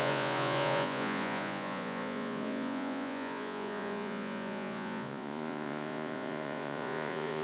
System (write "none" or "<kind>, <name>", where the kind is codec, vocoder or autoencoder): vocoder, Vocos